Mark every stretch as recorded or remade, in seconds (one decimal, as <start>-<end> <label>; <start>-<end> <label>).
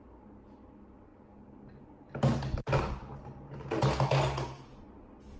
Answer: 0.0-5.4 recorded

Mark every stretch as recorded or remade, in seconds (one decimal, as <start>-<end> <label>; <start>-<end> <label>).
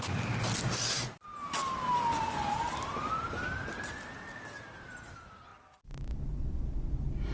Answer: 0.0-7.3 recorded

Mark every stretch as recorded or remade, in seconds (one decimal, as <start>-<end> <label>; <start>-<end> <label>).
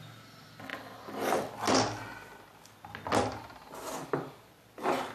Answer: 0.0-5.1 recorded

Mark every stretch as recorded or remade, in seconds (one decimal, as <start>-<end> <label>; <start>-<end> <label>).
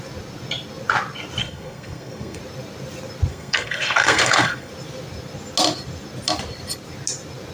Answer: 0.0-1.4 recorded; 1.4-2.4 remade; 2.4-3.3 recorded; 3.3-4.7 remade; 4.7-7.5 recorded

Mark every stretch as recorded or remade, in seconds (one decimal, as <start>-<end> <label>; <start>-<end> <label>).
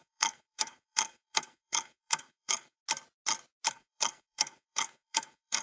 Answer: 0.0-2.8 remade; 2.8-3.7 recorded; 3.7-5.6 remade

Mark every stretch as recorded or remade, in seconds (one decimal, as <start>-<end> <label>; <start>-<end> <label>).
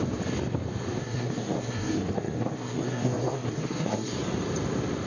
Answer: 0.0-1.0 recorded; 1.0-4.1 remade; 4.1-5.1 recorded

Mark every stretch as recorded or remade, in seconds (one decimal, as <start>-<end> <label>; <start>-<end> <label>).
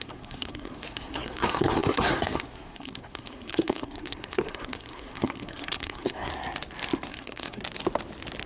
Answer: 0.0-6.3 remade; 6.3-7.1 recorded; 7.1-7.6 remade; 7.6-8.5 recorded